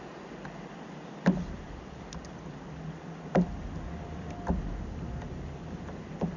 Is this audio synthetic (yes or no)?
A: no